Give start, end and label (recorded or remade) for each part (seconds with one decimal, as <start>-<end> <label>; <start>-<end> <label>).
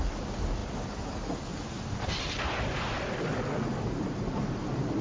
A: 0.0-5.0 recorded